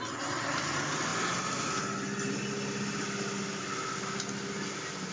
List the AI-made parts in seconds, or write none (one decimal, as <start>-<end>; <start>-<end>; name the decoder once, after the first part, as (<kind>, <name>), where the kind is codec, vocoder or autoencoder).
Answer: none